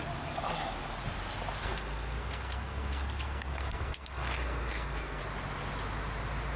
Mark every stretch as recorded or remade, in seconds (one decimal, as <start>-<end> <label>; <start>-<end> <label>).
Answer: 0.0-1.6 recorded; 1.6-5.2 remade; 5.2-6.6 recorded